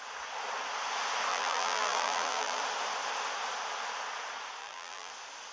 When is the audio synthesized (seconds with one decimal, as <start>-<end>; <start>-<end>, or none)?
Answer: 1.3-2.6; 4.6-5.1